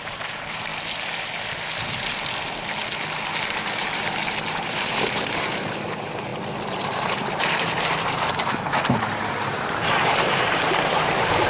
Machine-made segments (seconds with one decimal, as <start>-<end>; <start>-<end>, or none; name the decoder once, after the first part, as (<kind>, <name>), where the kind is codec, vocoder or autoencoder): 0.0-0.7 (vocoder, BigVGAN v2); 4.5-6.3; 6.8-11.5